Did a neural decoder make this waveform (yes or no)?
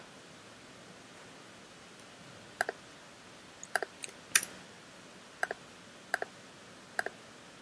no